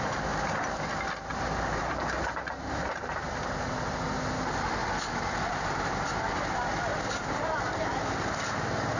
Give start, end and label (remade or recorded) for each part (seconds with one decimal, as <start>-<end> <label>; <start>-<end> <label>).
0.0-1.3 recorded; 1.3-2.2 remade; 2.2-6.9 recorded; 6.9-7.8 remade; 7.8-9.0 recorded